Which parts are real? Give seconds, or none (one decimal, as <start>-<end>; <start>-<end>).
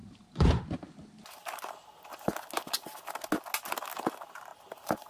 0.6-4.5